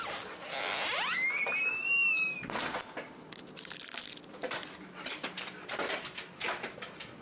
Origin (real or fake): real